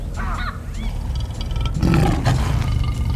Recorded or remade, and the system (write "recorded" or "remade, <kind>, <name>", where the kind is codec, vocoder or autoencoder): recorded